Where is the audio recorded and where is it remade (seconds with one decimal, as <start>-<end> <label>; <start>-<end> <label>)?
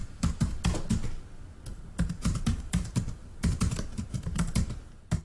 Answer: 0.0-0.6 remade; 0.6-1.7 recorded; 1.7-4.8 remade; 4.8-5.2 recorded